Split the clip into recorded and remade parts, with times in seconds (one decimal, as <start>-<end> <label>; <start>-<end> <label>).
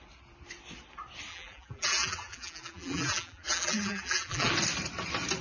0.0-1.3 recorded; 1.3-4.5 remade; 4.5-5.4 recorded